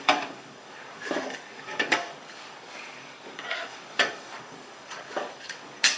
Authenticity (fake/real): fake